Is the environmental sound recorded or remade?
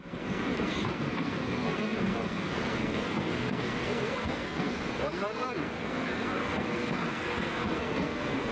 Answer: remade